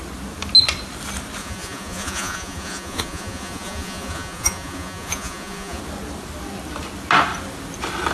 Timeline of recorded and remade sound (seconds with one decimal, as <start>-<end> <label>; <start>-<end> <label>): 0.0-1.4 recorded; 1.4-5.8 remade; 5.8-8.1 recorded